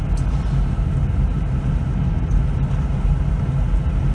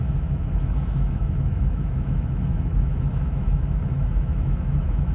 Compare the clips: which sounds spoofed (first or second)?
second